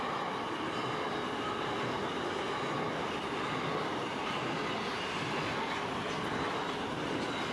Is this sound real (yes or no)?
yes